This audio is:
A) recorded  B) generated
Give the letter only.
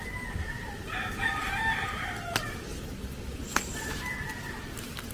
A